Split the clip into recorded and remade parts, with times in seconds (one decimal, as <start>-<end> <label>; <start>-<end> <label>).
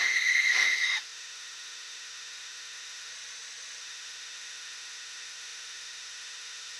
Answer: 0.0-3.1 remade; 3.1-3.8 recorded; 3.8-6.8 remade